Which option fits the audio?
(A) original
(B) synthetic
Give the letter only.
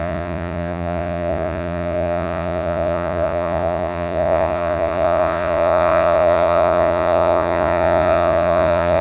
B